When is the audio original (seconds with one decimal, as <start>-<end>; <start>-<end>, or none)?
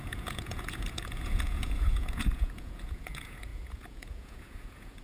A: none